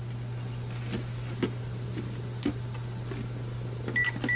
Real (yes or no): yes